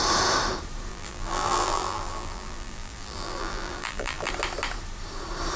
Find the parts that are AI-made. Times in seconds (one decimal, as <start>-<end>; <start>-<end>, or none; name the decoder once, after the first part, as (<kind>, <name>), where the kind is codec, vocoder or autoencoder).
0.9-4.3 (vocoder, BigVGAN v2)